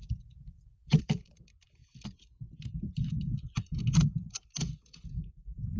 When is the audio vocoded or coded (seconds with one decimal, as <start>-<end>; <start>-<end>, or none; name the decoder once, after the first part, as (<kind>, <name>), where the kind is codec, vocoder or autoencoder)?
0.0-1.8 (vocoder, BigVGAN v2); 5.3-5.8